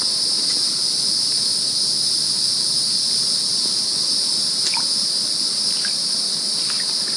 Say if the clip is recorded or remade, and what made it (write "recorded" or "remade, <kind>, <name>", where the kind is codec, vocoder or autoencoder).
recorded